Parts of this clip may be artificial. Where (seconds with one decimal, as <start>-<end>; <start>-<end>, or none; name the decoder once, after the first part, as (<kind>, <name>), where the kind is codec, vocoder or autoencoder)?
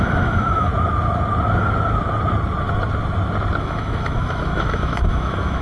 0.0-0.7 (autoencoder, DAC-VAE); 3.6-5.6